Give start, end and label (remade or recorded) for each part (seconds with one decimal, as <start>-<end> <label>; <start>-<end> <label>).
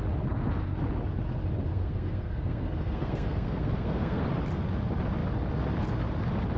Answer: 0.0-1.7 recorded; 1.7-4.2 remade; 4.2-6.6 recorded